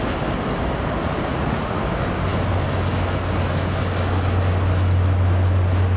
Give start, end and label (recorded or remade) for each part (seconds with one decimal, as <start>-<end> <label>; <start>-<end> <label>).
0.0-1.3 recorded; 1.3-1.8 remade; 1.8-6.0 recorded